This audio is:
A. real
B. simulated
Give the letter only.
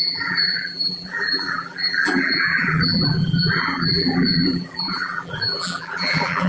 B